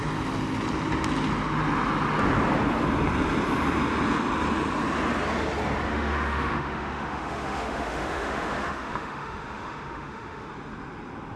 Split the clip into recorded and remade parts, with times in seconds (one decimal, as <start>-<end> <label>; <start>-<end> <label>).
0.0-5.9 recorded; 5.9-10.5 remade; 10.5-11.4 recorded